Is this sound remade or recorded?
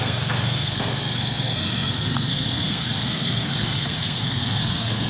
remade